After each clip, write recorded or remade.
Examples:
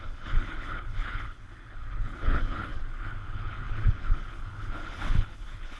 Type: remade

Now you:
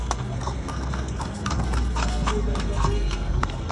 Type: remade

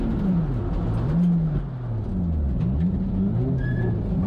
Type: recorded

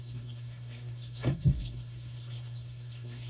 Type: remade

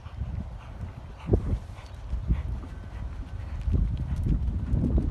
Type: recorded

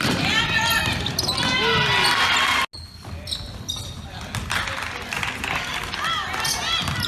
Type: recorded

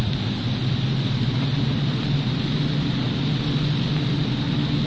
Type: recorded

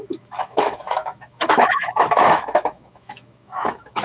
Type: remade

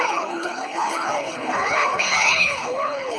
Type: remade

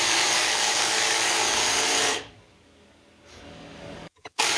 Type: remade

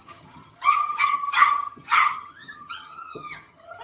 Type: remade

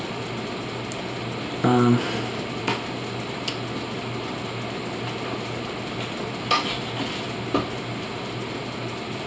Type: recorded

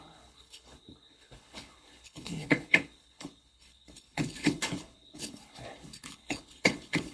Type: remade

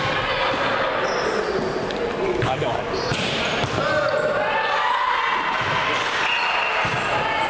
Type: recorded